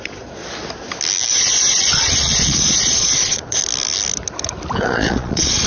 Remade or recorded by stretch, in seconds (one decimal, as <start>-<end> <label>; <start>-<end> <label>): 0.0-0.4 remade; 0.4-1.3 recorded; 1.3-3.6 remade; 3.6-4.8 recorded; 4.8-5.7 remade